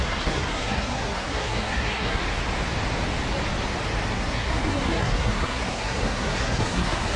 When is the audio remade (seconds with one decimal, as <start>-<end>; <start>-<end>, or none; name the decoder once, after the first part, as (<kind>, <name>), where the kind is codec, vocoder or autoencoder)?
0.0-2.2 (codec, SNAC); 4.1-7.2